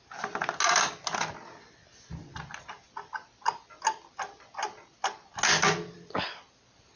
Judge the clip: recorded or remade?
recorded